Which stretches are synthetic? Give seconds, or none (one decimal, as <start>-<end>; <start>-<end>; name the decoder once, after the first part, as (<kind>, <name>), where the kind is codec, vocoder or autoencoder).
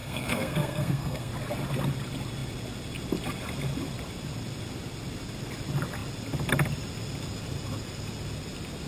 0.0-1.3 (codec, SNAC)